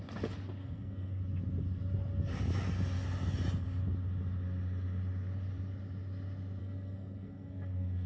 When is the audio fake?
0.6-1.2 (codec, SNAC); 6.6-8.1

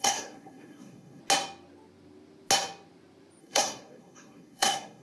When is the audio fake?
0.0-1.2 (codec, SNAC); 3.4-5.0

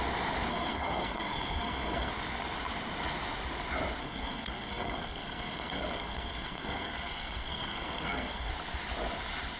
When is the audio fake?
0.5-2.1 (codec, SNAC); 4.0-8.5

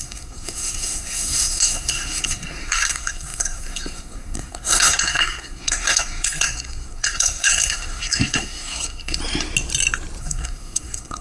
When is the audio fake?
0.0-9.2 (codec, SNAC); 10.2-11.2

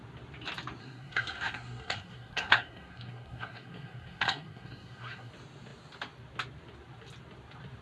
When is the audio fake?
0.8-5.3 (codec, SNAC)

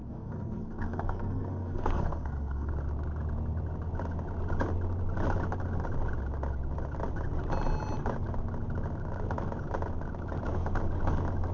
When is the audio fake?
0.0-2.7 (codec, SNAC)